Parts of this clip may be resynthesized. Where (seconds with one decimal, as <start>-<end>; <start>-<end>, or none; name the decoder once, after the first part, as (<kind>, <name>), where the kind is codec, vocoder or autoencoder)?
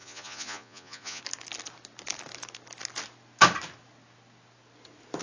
0.0-1.2 (vocoder, Vocos)